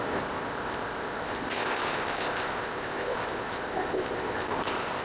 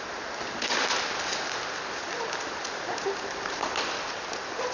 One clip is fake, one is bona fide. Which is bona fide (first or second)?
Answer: second